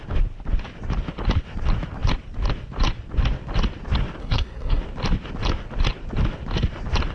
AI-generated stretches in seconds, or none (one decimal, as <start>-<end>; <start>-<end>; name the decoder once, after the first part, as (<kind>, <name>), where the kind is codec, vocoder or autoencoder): 4.2-4.8 (codec, SNAC)